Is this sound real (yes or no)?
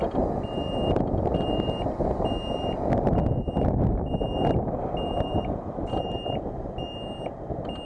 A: yes